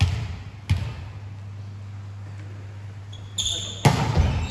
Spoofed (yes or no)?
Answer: no